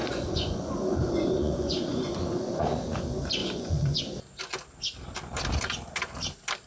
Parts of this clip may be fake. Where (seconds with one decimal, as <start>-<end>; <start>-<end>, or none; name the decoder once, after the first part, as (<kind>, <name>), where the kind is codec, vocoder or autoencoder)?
0.0-3.0 (vocoder, Vocos); 3.4-4.0